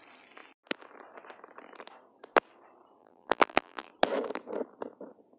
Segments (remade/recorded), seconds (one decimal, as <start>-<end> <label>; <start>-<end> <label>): 0.0-3.0 recorded; 3.0-3.9 remade; 3.9-5.4 recorded